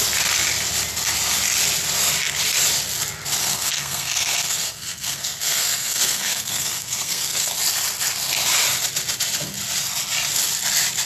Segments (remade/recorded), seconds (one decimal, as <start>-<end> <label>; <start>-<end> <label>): 0.0-3.4 recorded; 3.4-7.5 remade; 7.5-11.1 recorded